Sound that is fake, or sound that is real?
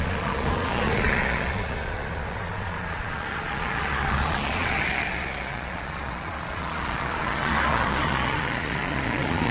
fake